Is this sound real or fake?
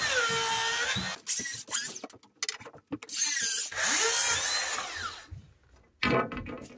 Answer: real